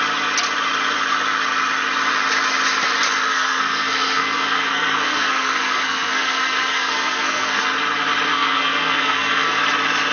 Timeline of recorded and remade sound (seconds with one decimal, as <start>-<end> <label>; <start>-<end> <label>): 0.0-3.3 recorded; 3.3-7.6 remade; 7.6-8.3 recorded; 8.3-9.6 remade; 9.6-10.1 recorded